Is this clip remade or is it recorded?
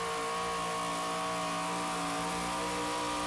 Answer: recorded